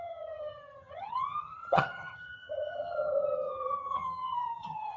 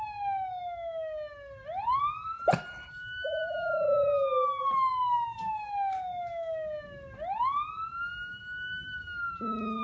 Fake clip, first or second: first